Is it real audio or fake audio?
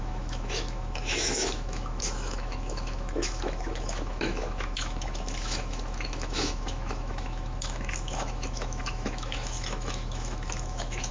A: fake